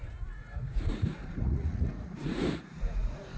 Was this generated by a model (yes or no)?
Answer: yes